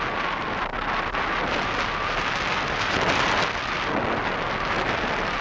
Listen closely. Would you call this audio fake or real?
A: real